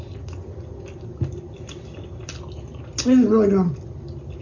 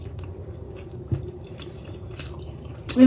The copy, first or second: second